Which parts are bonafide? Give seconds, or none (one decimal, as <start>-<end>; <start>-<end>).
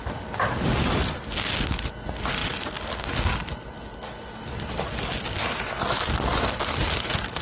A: 0.0-7.4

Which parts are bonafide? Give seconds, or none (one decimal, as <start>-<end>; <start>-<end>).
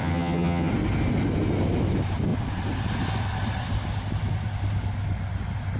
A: 0.7-5.8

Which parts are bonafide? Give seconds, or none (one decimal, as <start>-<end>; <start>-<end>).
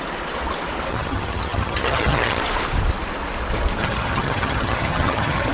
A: 0.0-0.9; 2.4-3.8